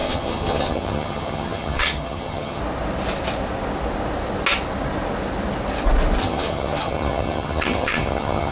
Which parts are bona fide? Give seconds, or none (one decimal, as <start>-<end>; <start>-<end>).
2.6-6.2